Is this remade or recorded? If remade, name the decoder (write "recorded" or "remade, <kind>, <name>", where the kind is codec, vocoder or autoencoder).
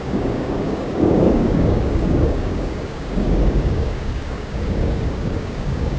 remade, codec, DAC